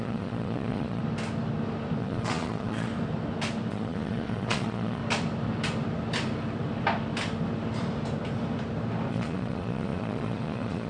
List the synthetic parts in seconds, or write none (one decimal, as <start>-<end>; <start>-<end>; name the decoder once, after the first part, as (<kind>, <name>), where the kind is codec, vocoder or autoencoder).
0.0-1.0 (vocoder, Vocos); 2.0-2.9; 3.7-5.0; 9.1-10.9